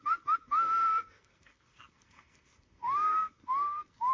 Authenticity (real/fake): fake